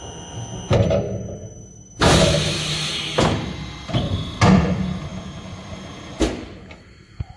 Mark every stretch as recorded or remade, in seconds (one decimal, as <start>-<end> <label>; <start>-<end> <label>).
0.0-7.4 recorded